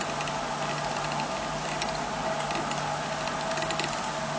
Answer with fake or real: real